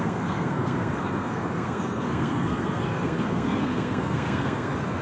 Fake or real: fake